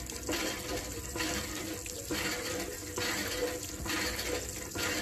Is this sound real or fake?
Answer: real